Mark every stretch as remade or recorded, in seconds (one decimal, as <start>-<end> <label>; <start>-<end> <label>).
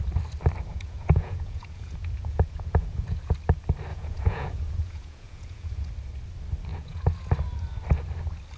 0.0-0.7 recorded; 0.7-3.3 remade; 3.3-3.9 recorded; 3.9-5.9 remade; 5.9-6.7 recorded; 6.7-7.3 remade; 7.3-8.6 recorded